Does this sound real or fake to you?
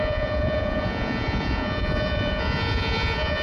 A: fake